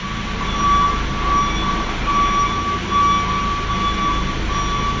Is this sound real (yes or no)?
yes